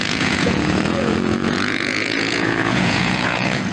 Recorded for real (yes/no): no